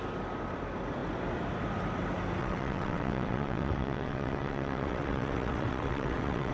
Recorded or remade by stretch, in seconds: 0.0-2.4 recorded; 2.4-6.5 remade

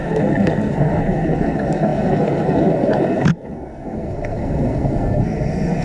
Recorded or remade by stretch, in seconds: 0.0-5.8 remade

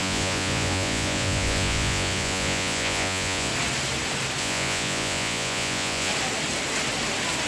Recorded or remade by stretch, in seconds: 0.0-3.5 remade; 3.5-4.4 recorded; 4.4-6.1 remade; 6.1-7.5 recorded

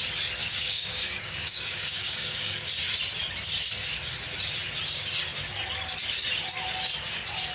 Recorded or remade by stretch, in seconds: 0.0-0.4 recorded; 0.4-2.7 remade; 2.7-7.5 recorded